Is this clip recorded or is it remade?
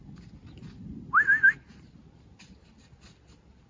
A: recorded